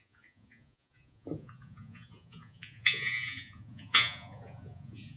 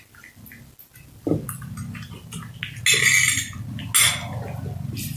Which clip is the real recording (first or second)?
second